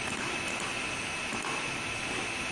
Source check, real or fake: real